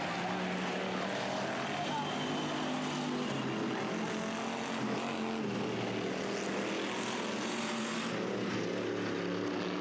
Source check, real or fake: real